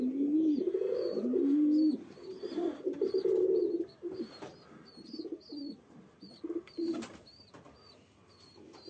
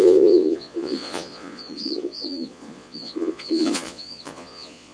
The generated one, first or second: second